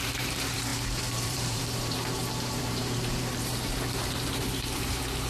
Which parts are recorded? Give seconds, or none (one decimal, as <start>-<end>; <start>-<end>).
none